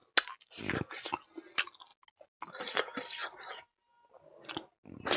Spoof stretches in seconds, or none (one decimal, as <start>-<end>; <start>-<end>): none